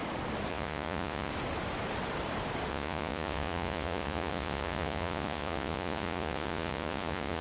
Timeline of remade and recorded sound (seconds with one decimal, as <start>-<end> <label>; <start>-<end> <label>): 0.0-0.5 recorded; 0.5-1.3 remade; 1.3-2.7 recorded; 2.7-7.4 remade